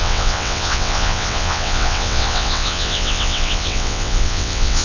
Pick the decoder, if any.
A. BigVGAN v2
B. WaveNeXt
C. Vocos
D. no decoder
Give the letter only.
B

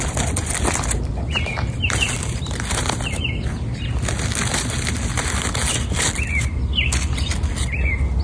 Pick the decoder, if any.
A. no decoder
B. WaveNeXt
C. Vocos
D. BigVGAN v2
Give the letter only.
A